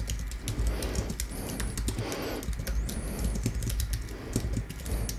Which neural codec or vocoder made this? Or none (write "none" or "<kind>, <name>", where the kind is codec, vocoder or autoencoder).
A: none